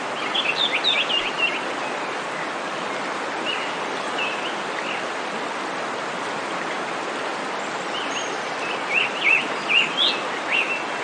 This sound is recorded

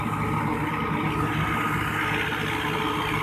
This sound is recorded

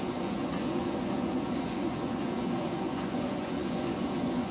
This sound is remade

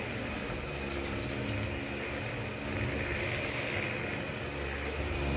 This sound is recorded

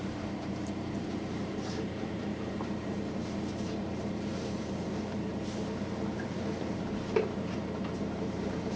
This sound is remade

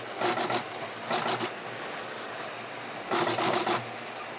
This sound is recorded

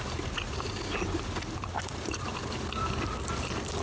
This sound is recorded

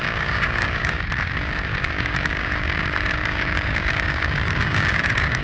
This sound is remade